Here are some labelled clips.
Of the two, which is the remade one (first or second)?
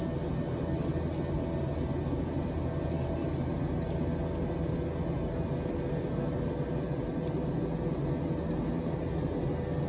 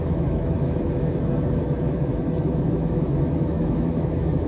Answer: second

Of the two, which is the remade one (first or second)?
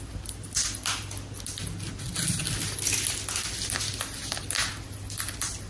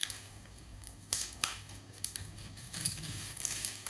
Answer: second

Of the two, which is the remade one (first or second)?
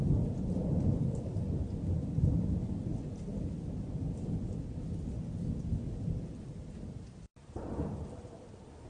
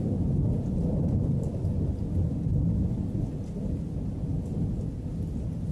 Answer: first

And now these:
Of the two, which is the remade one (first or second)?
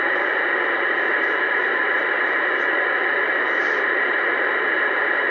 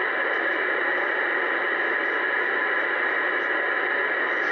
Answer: first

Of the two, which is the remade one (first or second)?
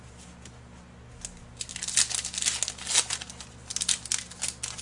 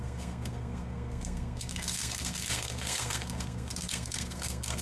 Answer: second